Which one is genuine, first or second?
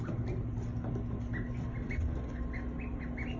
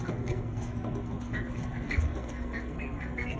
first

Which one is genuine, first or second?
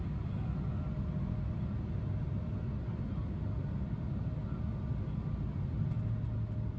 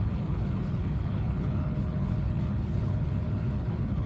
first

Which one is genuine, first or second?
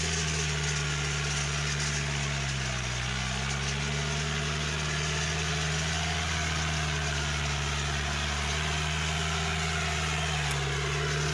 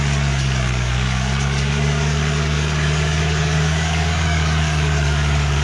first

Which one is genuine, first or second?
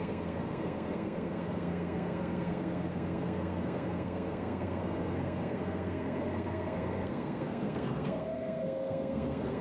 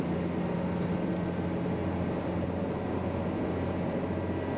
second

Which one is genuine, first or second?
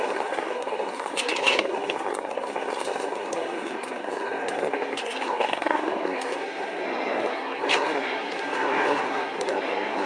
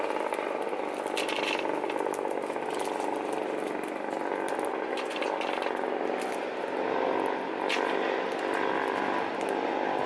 second